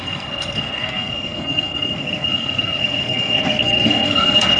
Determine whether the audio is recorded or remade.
remade